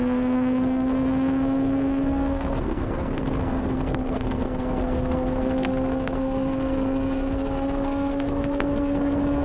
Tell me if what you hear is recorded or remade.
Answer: remade